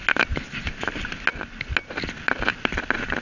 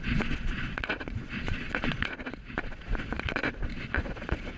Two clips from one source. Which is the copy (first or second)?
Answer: second